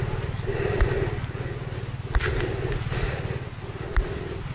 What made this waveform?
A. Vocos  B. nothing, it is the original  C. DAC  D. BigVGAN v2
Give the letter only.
B